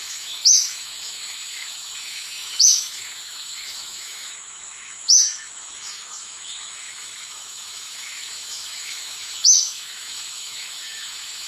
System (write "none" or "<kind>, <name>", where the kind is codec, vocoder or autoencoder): autoencoder, DAC-VAE